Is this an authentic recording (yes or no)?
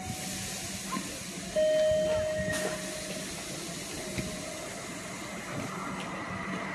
yes